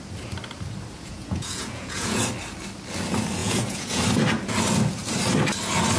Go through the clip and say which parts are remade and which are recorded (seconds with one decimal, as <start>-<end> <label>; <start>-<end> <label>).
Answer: 0.0-0.9 recorded; 0.9-2.2 remade; 2.2-3.4 recorded; 3.4-4.0 remade; 4.0-6.0 recorded